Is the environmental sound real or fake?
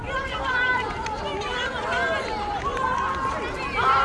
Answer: real